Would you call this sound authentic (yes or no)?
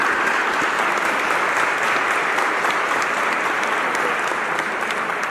yes